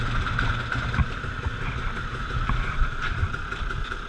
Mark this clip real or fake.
real